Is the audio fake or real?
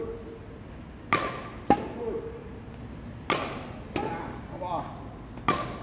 real